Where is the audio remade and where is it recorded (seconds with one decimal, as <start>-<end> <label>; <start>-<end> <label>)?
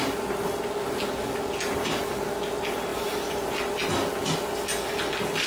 0.0-2.9 recorded; 2.9-3.5 remade; 3.5-5.5 recorded